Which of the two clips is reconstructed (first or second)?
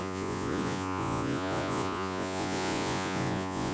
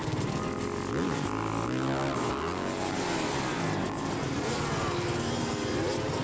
first